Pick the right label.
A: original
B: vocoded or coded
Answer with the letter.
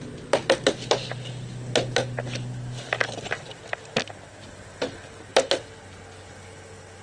A